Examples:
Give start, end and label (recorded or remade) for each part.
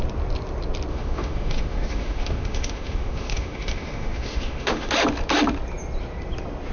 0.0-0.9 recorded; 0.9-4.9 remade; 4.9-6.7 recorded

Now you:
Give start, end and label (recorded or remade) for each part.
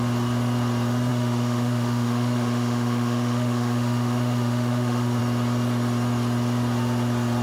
0.0-1.1 recorded; 1.1-5.2 remade; 5.2-7.4 recorded